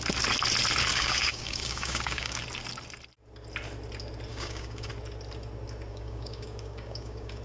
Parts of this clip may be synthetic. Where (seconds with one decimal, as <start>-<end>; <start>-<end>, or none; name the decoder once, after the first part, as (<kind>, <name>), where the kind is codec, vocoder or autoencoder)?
0.9-2.4 (codec, DAC); 4.3-4.9; 5.9-7.4